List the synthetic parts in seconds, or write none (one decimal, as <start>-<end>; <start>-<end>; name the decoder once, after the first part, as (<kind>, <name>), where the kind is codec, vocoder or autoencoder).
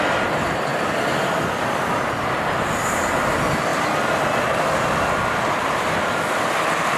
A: none